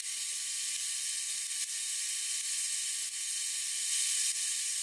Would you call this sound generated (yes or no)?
no